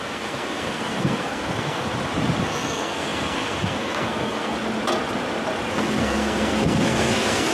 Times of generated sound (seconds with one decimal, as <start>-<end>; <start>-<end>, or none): 0.0-1.9; 2.4-4.5; 5.7-7.5